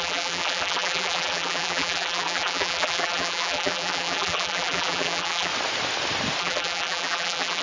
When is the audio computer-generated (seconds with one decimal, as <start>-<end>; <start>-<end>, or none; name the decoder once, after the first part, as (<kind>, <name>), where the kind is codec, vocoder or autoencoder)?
0.0-5.5 (vocoder, BigVGAN v2); 6.4-7.6